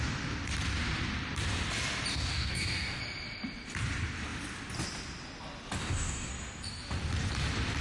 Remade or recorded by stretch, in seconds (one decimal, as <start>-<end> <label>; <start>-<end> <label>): 0.0-2.1 recorded; 2.1-3.0 remade; 3.0-5.8 recorded; 5.8-6.3 remade; 6.3-7.8 recorded